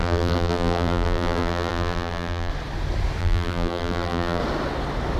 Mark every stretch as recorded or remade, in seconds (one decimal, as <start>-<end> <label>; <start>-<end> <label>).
0.0-2.5 remade; 2.5-3.2 recorded; 3.2-4.4 remade; 4.4-5.2 recorded